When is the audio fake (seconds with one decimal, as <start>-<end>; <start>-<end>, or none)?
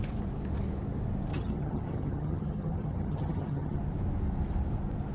1.3-3.8